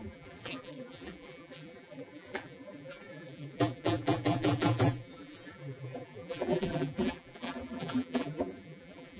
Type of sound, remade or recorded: remade